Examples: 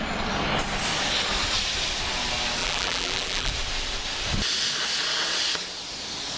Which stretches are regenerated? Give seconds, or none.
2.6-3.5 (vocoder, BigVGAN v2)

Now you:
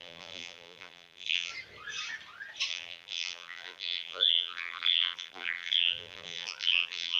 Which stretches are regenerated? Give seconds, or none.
0.0-1.5 (vocoder, BigVGAN v2); 2.7-7.2

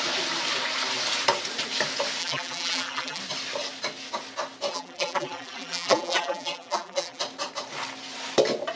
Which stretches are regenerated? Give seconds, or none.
2.2-3.2 (vocoder, BigVGAN v2); 4.7-7.2

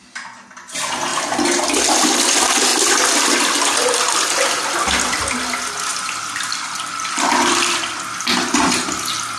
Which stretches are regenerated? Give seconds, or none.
5.9-7.8 (vocoder, BigVGAN v2)